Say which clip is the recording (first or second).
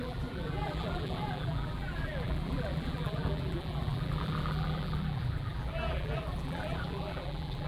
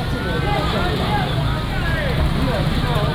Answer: second